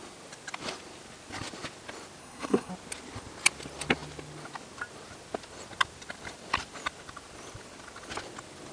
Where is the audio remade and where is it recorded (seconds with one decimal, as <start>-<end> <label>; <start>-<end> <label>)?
0.0-2.2 recorded; 2.2-2.7 remade; 2.7-8.7 recorded

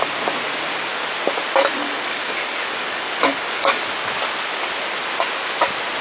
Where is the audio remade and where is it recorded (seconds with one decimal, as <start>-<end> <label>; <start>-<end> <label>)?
0.0-1.8 recorded; 1.8-3.8 remade; 3.8-6.0 recorded